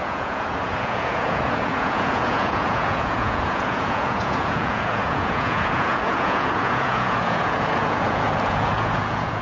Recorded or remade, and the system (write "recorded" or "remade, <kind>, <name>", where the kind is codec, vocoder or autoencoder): remade, vocoder, Vocos